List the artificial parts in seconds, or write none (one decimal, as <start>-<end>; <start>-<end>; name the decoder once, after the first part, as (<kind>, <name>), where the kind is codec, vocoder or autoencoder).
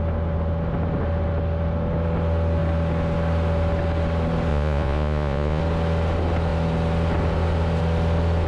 4.5-5.6 (vocoder, Vocos)